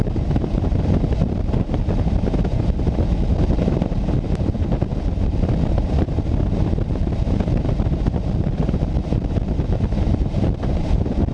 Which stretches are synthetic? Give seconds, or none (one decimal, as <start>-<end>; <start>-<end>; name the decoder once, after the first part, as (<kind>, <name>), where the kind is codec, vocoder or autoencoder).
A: none